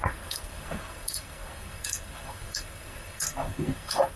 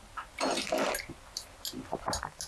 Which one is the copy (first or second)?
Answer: first